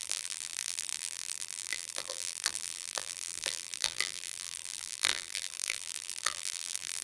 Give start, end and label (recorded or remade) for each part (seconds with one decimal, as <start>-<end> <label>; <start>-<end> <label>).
0.0-7.0 remade